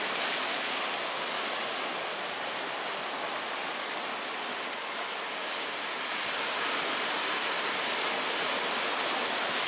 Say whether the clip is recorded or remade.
recorded